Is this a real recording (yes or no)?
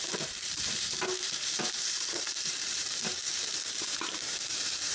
no